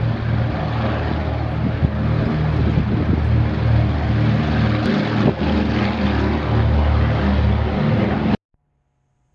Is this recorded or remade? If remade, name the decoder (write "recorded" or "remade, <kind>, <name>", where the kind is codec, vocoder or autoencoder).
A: recorded